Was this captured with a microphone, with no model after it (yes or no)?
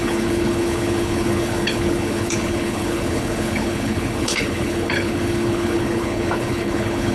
no